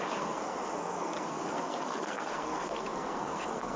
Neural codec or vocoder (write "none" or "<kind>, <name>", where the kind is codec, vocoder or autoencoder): codec, SNAC